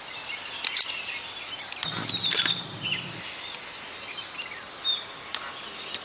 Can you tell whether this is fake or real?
real